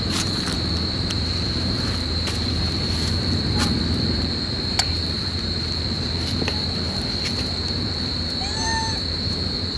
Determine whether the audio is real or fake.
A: fake